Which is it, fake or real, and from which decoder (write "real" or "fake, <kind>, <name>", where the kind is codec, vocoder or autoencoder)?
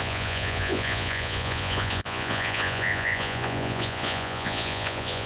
fake, vocoder, Vocos